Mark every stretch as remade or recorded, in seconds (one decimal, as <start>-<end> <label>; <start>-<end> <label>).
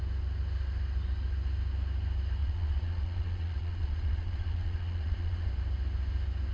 0.0-2.4 recorded; 2.4-5.5 remade; 5.5-6.5 recorded